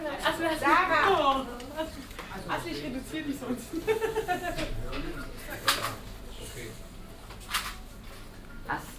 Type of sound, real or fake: real